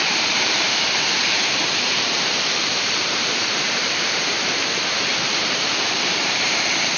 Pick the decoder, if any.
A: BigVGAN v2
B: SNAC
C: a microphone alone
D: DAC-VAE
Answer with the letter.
A